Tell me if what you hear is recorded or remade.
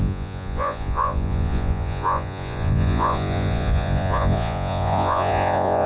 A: remade